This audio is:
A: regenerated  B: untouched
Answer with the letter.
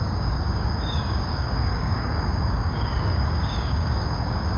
A